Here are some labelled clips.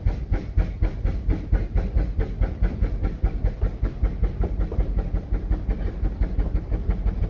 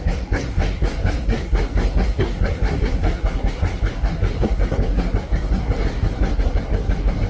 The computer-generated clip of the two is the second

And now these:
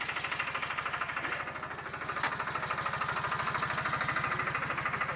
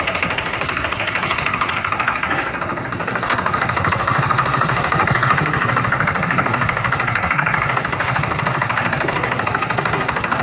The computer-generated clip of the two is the second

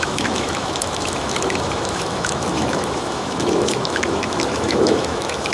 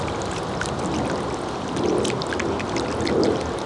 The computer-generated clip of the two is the first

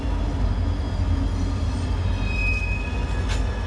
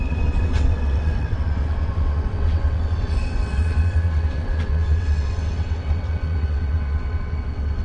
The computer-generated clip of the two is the second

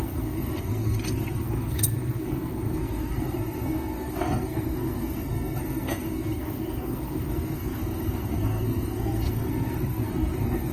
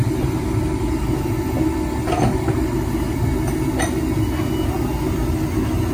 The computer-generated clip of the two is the first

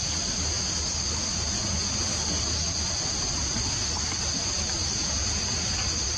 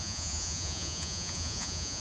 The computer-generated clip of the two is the second